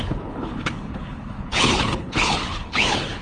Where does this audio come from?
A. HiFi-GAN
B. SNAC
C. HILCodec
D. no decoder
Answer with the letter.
C